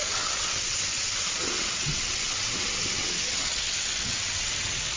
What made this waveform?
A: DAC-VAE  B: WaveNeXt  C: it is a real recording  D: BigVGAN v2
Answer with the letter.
B